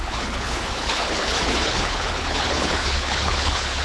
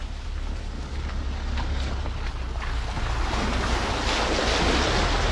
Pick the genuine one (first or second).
second